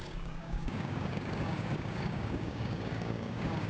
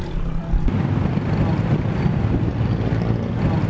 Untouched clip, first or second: second